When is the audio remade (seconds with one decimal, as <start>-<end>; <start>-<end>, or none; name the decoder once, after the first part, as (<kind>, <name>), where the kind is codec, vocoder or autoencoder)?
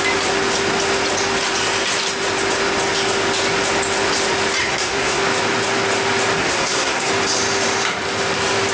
4.6-5.2 (codec, SNAC); 6.4-7.1